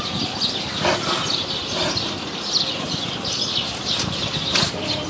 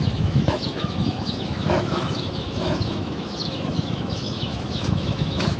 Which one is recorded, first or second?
first